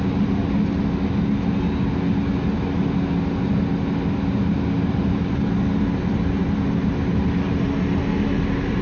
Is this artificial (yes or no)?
no